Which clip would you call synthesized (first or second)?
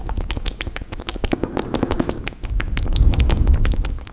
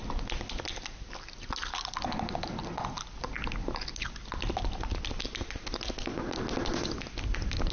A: first